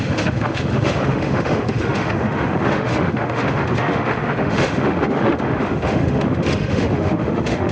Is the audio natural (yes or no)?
no